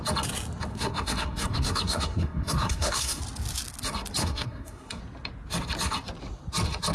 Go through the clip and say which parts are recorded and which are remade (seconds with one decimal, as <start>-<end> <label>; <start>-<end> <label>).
0.0-0.7 recorded; 0.7-3.2 remade; 3.2-4.2 recorded; 4.2-5.0 remade; 5.0-6.9 recorded